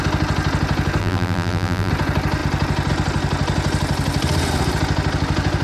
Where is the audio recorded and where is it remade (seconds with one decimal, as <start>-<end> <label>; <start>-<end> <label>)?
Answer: 0.0-1.0 recorded; 1.0-1.9 remade; 1.9-5.6 recorded